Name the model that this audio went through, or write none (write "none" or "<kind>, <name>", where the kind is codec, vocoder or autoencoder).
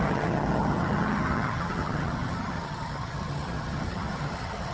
vocoder, HiFi-GAN